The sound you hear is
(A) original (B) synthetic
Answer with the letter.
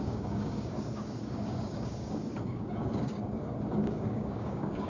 B